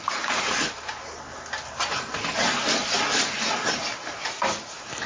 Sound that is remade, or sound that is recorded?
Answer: recorded